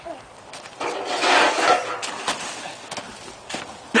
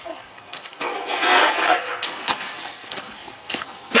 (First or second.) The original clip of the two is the first